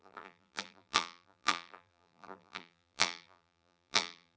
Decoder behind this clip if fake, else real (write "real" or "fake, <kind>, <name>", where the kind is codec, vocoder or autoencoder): fake, vocoder, BigVGAN v2